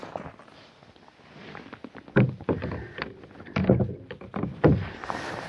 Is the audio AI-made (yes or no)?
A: no